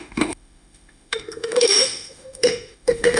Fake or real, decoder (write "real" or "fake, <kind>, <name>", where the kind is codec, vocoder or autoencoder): fake, autoencoder, DAC-VAE